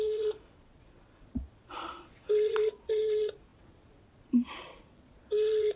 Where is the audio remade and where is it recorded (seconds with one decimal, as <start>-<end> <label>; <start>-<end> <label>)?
0.0-5.8 remade